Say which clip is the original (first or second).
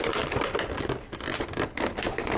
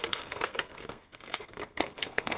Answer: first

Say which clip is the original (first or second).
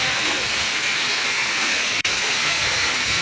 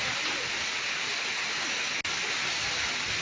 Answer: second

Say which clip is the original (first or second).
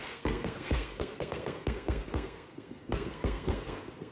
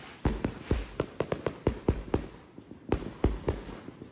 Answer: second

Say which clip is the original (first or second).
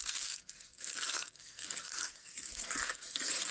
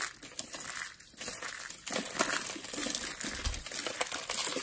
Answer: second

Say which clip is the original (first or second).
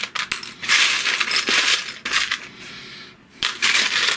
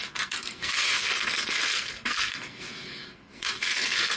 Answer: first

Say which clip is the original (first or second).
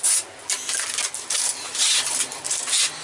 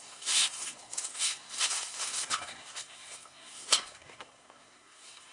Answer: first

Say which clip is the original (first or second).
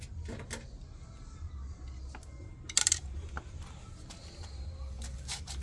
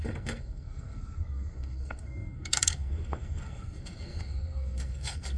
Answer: first